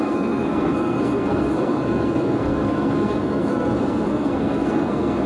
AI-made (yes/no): yes